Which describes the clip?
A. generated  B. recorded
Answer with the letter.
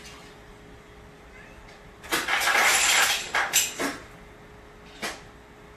B